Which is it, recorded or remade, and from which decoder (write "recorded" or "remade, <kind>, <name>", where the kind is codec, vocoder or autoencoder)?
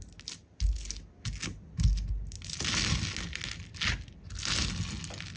recorded